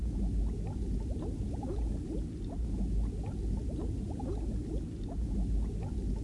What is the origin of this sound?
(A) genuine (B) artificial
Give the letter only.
A